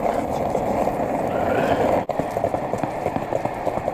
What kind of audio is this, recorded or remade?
recorded